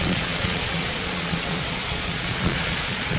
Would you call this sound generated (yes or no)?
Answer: yes